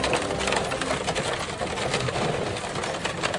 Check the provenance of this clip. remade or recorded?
recorded